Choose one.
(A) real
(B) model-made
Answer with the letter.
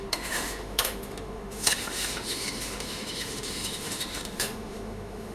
B